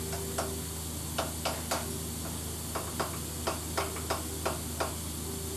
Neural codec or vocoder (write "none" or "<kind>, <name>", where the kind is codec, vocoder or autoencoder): none